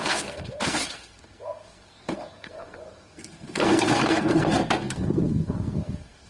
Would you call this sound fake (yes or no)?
yes